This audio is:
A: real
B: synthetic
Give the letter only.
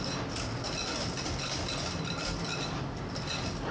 A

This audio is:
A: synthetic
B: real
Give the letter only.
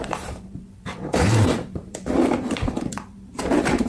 A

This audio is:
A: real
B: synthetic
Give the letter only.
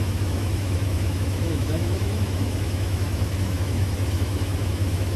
B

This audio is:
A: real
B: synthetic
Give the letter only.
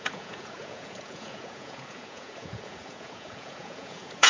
B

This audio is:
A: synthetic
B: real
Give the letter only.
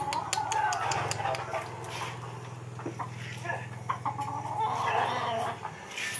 B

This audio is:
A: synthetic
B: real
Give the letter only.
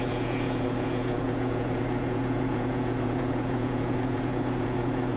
A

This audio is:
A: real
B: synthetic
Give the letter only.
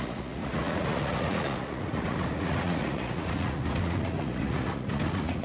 B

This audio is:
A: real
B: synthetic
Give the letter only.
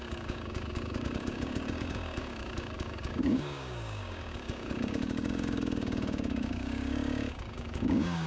B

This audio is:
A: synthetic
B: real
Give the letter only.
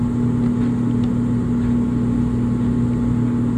B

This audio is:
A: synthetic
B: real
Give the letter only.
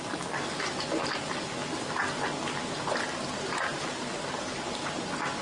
B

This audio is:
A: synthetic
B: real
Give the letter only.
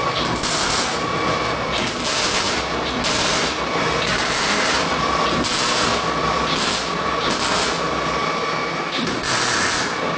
B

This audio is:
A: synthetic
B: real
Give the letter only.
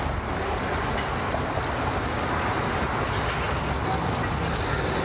B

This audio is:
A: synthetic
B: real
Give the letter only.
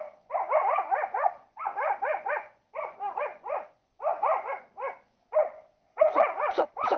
A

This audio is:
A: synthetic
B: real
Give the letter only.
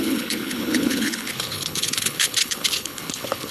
A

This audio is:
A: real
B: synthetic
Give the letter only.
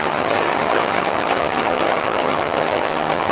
B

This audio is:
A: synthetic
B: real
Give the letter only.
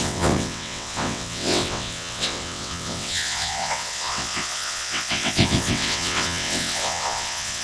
A